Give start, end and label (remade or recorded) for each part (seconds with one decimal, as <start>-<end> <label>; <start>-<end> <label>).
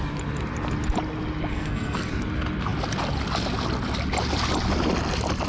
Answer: 0.0-1.5 recorded; 1.5-2.1 remade; 2.1-5.5 recorded